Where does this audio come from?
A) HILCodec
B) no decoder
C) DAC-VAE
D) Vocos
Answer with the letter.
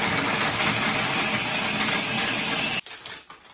B